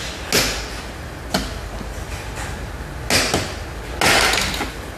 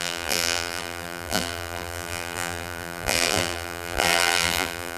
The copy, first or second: second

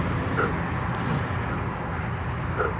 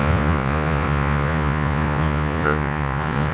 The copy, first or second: second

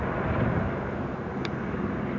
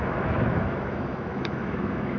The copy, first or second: second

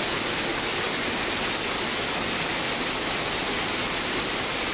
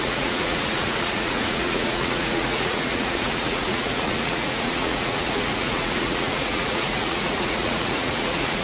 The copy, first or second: second